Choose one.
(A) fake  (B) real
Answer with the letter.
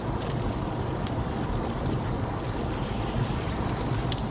B